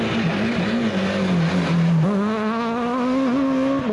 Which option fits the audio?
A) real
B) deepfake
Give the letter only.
A